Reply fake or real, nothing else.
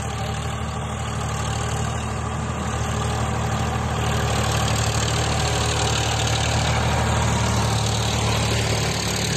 real